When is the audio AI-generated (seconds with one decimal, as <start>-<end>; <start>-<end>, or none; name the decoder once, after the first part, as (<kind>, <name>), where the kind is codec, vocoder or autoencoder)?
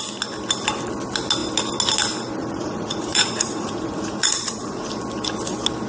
2.4-4.9 (vocoder, Vocos)